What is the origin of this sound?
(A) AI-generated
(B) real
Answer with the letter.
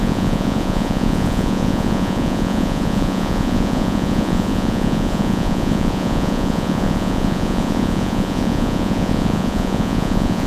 A